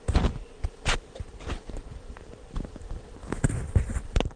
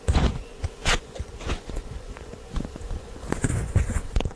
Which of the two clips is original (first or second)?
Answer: first